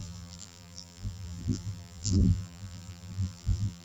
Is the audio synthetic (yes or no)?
yes